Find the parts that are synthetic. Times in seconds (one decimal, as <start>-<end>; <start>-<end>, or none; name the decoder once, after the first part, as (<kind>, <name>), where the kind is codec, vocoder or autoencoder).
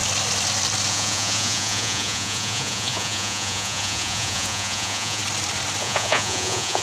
0.9-5.2 (vocoder, Vocos); 5.8-6.8